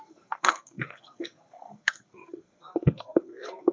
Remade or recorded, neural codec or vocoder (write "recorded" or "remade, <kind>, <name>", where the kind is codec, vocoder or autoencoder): remade, codec, SNAC